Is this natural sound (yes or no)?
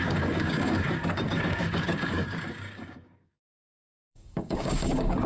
no